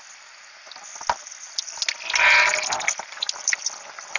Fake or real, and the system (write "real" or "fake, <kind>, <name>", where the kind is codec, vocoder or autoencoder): real